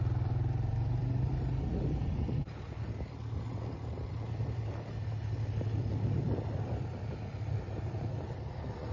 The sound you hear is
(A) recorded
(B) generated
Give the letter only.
B